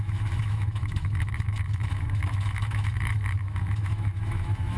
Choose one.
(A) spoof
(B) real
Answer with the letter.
A